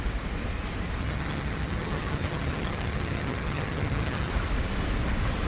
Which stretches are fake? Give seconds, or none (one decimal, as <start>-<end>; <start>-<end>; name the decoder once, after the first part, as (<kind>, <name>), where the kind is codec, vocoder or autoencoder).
1.0-4.3 (vocoder, HiFi-GAN)